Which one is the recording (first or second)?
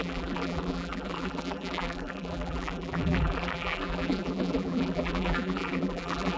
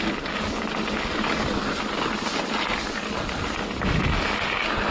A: second